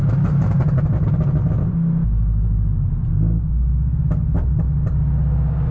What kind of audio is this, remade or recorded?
recorded